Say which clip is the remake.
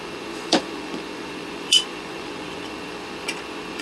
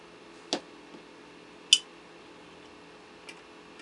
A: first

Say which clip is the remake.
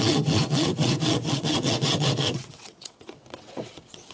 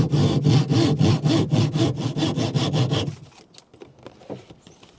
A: first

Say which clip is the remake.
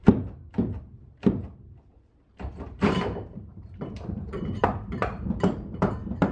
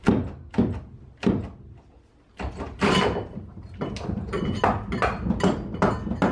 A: first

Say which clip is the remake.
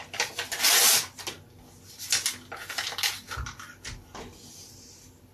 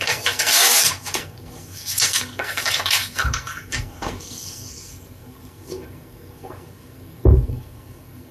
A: second